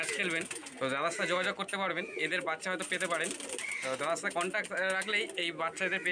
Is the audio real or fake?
real